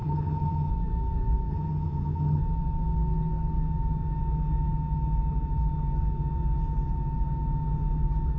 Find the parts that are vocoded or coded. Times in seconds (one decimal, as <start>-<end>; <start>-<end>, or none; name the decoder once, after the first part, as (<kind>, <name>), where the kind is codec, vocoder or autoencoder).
0.0-0.7 (vocoder, HiFi-GAN); 1.5-2.4